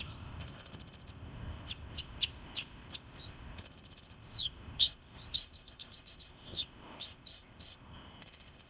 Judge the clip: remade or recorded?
remade